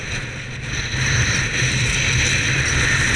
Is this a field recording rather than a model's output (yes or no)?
yes